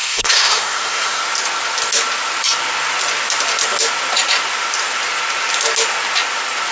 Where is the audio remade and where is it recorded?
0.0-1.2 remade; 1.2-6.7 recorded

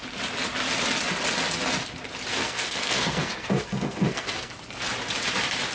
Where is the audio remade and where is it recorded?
0.0-2.3 recorded; 2.3-4.5 remade; 4.5-5.7 recorded

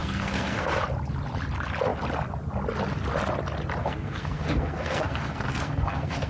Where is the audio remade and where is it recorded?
0.0-0.8 remade; 0.8-3.8 recorded; 3.8-6.3 remade

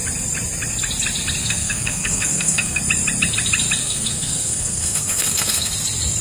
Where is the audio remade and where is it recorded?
0.0-1.4 recorded; 1.4-2.8 remade; 2.8-3.8 recorded; 3.8-5.7 remade; 5.7-6.2 recorded

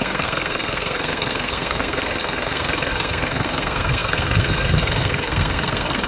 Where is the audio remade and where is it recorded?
0.0-6.1 remade

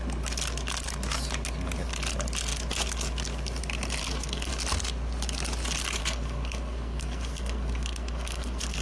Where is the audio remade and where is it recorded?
0.0-4.0 recorded; 4.0-4.5 remade; 4.5-6.0 recorded; 6.0-8.8 remade